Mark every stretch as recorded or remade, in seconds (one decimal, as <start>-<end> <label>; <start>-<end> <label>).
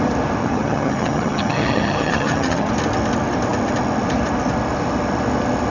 0.0-0.4 recorded; 0.4-2.7 remade; 2.7-5.7 recorded